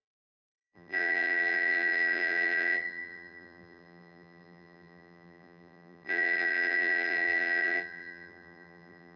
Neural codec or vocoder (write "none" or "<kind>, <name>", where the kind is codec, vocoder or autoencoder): vocoder, BigVGAN v2